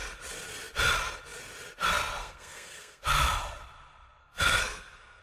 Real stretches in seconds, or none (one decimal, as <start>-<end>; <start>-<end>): 0.0-2.2; 3.0-4.2